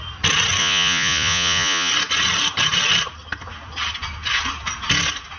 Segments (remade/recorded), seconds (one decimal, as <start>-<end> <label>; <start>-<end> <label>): 0.0-0.6 recorded; 0.6-1.9 remade; 1.9-5.4 recorded